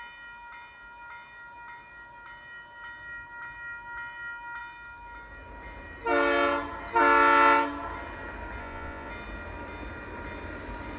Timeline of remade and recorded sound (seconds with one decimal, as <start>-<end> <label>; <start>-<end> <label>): 0.0-8.6 recorded; 8.6-9.1 remade; 9.1-11.0 recorded